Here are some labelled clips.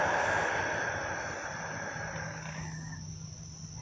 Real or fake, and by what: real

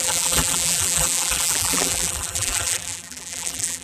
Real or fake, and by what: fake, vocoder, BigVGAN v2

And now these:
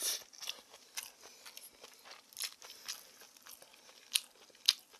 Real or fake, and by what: real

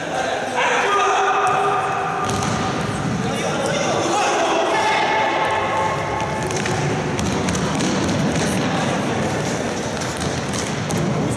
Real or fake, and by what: real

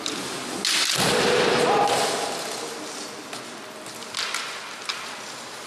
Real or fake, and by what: real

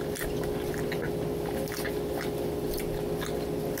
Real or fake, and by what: real